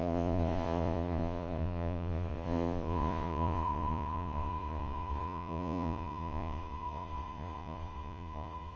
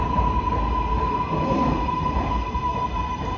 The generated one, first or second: first